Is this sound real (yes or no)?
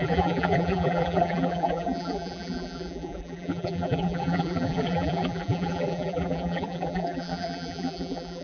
no